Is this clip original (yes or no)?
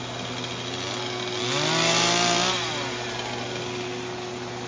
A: yes